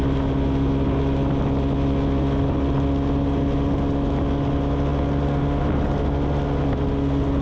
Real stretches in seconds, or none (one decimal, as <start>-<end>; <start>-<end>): 0.0-7.4